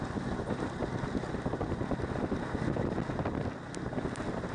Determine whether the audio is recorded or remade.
recorded